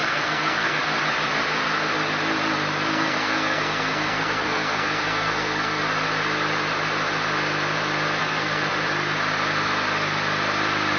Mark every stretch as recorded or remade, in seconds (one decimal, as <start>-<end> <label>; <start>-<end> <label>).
0.0-0.8 remade; 0.8-2.9 recorded; 2.9-5.8 remade; 5.8-8.2 recorded; 8.2-8.7 remade; 8.7-11.0 recorded